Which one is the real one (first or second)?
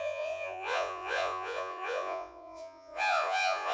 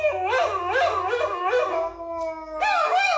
second